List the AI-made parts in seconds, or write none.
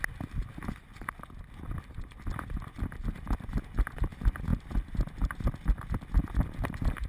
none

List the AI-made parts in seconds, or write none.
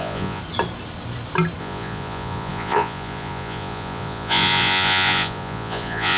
0.0-0.4 (vocoder, Vocos); 1.6-6.2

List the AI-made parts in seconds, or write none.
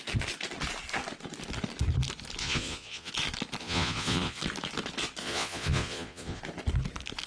2.4-3.1 (vocoder, Vocos); 3.6-4.4; 5.2-6.4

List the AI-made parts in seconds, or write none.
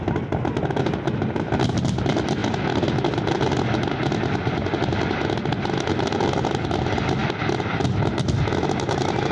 none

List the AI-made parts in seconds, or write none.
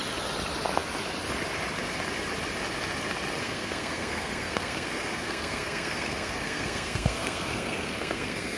3.4-8.6 (codec, SNAC)